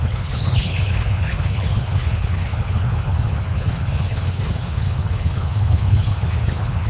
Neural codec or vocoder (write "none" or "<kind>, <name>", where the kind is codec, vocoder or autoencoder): codec, HILCodec